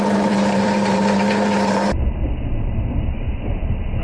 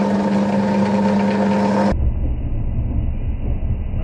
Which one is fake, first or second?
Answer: first